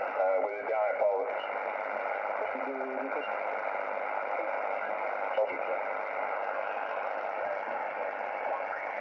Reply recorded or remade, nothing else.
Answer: recorded